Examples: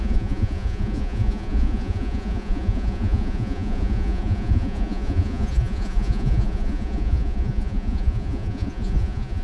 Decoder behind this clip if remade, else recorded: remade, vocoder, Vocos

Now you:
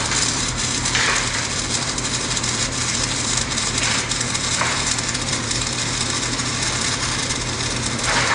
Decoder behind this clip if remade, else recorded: remade, vocoder, BigVGAN v2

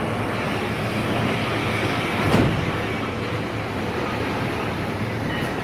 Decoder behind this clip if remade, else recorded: recorded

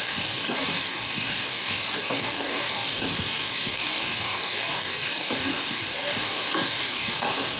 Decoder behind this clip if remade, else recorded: remade, codec, DAC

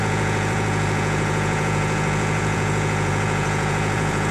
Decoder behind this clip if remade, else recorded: remade, vocoder, Vocos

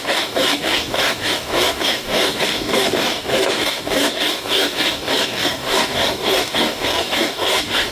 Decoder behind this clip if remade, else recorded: remade, codec, DAC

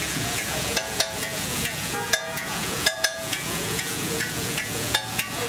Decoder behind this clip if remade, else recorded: remade, vocoder, Vocos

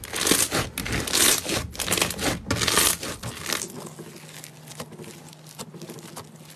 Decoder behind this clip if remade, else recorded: recorded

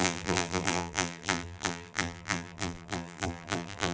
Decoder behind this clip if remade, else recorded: remade, vocoder, BigVGAN v2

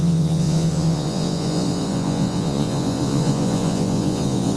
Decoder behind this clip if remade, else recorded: remade, vocoder, Vocos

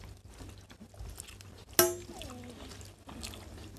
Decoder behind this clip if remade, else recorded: recorded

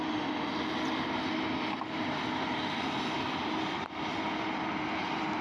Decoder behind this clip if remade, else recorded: recorded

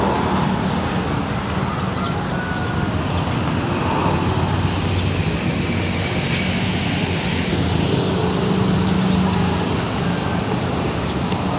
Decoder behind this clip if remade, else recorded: recorded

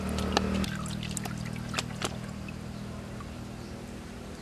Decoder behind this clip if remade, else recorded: recorded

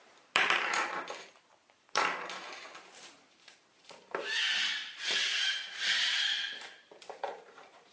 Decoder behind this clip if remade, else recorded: remade, vocoder, BigVGAN v2